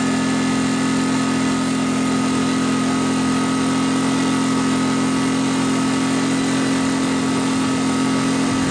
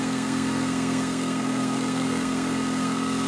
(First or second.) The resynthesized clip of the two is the second